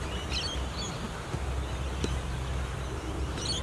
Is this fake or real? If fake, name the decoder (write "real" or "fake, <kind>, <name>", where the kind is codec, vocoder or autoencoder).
real